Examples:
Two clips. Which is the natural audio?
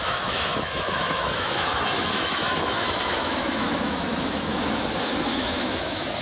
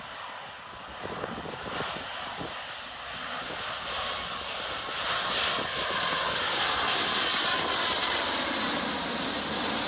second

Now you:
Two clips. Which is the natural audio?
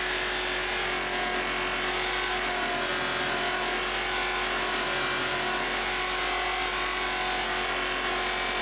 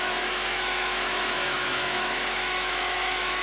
first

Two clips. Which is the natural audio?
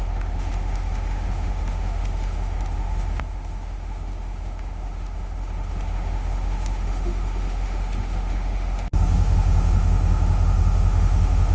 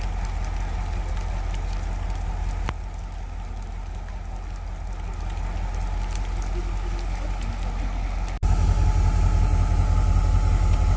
second